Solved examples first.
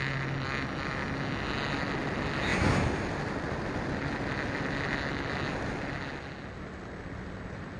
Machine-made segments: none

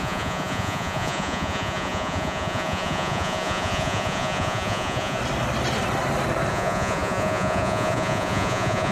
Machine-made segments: 0.0-5.2 (vocoder, Vocos); 6.5-8.9

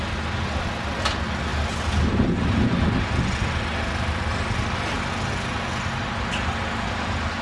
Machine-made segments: none

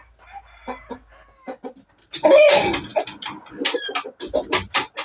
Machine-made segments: none

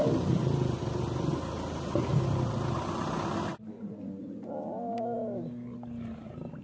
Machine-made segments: none